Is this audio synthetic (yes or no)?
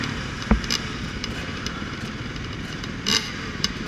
yes